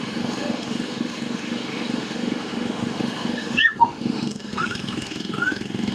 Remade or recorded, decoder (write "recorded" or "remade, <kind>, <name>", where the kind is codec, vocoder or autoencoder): remade, autoencoder, DAC-VAE